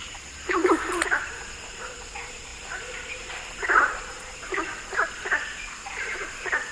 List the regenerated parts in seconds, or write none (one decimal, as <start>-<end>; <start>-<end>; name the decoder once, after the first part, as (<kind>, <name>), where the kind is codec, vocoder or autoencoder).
0.0-6.7 (vocoder, BigVGAN v2)